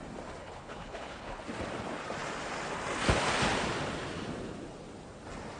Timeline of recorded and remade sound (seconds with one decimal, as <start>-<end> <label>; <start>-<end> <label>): 0.0-0.4 recorded; 0.4-1.4 remade; 1.4-5.6 recorded